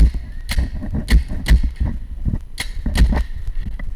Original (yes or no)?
yes